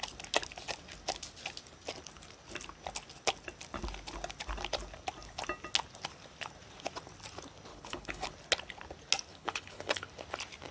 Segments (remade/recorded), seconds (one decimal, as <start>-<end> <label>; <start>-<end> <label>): 0.0-7.7 recorded; 7.7-8.3 remade; 8.3-9.3 recorded; 9.3-10.0 remade; 10.0-10.7 recorded